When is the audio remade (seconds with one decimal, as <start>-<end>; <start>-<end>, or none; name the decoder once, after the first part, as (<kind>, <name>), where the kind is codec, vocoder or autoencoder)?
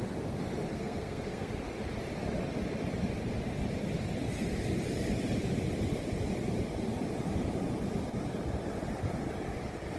0.7-1.5 (codec, SNAC)